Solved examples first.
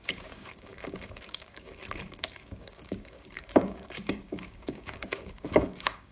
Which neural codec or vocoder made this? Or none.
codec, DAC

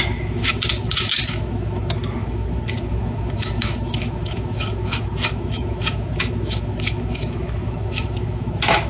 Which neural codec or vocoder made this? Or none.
autoencoder, DAC-VAE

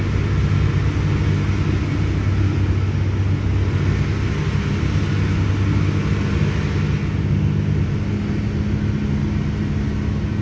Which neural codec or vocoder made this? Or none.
none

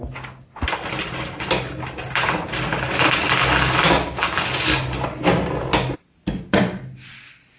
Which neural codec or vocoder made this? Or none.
none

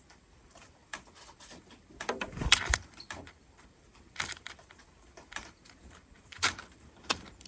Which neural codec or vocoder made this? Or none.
vocoder, BigVGAN v2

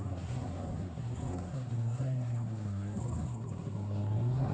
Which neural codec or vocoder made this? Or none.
codec, SNAC